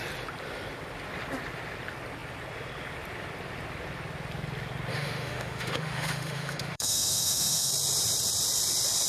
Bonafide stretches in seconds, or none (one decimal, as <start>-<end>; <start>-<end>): 0.0-4.9; 7.7-9.1